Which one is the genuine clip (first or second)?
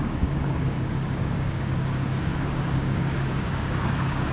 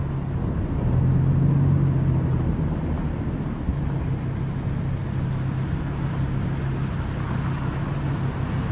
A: second